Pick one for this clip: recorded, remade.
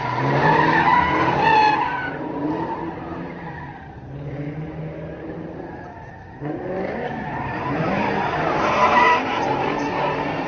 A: remade